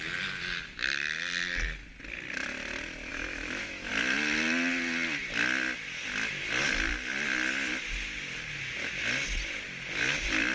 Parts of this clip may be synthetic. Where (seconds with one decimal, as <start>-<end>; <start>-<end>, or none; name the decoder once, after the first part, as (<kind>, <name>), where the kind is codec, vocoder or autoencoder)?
3.1-3.9 (autoencoder, DAC-VAE)